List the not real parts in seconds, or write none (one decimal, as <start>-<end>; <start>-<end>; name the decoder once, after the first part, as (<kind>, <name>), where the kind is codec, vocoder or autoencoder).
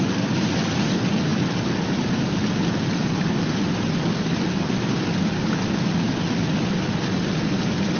none